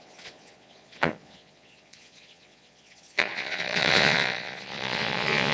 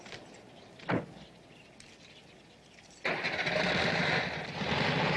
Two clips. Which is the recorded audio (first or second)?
second